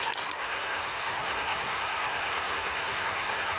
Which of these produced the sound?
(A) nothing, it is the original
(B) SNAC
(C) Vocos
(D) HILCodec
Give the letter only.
B